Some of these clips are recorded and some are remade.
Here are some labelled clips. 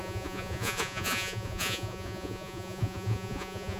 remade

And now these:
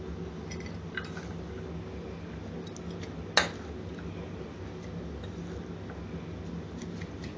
recorded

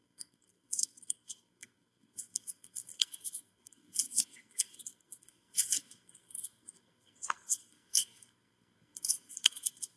remade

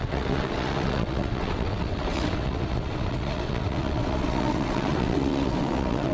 remade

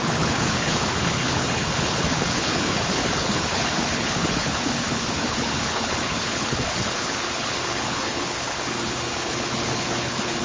remade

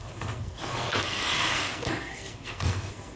remade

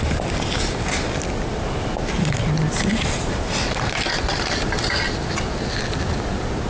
recorded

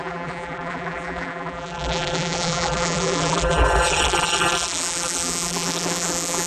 remade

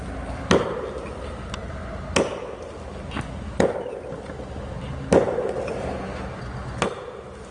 recorded